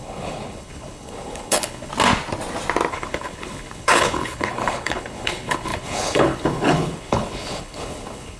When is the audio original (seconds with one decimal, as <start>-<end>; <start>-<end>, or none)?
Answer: 1.9-2.9